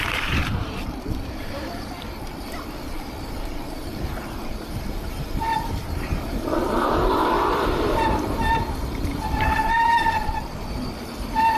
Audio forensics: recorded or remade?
remade